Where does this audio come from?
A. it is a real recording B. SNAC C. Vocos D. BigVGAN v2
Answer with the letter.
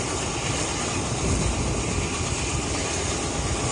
A